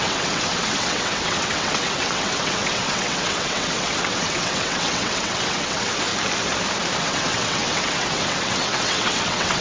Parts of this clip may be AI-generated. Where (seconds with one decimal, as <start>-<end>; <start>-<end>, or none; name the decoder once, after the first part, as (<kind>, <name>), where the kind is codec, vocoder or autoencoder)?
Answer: 0.0-6.1 (vocoder, WaveNeXt); 7.0-9.6